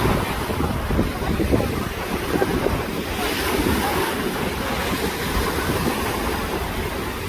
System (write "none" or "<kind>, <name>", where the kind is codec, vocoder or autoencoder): vocoder, BigVGAN v2